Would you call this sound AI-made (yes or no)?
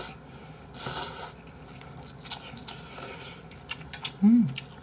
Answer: no